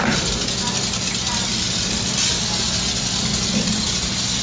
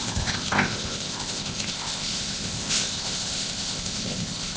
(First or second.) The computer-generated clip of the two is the second